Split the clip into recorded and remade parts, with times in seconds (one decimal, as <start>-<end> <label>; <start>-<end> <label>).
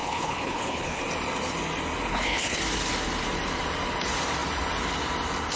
0.0-1.0 remade; 1.0-2.1 recorded; 2.1-2.6 remade; 2.6-5.6 recorded